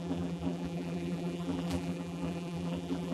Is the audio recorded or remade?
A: remade